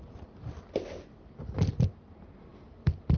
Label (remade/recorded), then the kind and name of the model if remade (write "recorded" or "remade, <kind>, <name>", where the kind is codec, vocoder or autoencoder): recorded